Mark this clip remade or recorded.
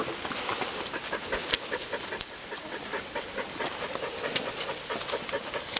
recorded